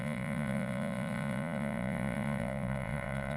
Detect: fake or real fake